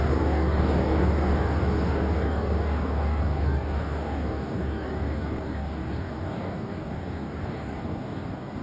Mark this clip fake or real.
fake